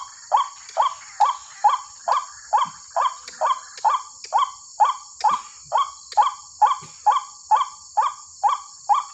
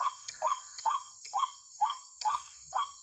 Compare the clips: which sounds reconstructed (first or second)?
second